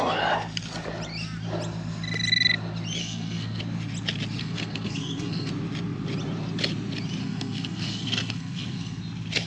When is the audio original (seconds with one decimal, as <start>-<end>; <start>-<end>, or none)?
0.0-3.0; 3.6-4.4; 5.5-7.2; 9.0-9.5